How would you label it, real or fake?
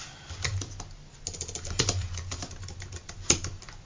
real